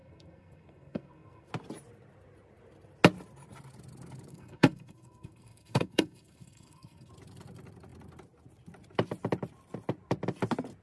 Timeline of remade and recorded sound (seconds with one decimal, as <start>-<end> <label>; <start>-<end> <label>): 0.0-1.5 remade; 1.5-4.3 recorded; 4.3-7.1 remade; 7.1-10.8 recorded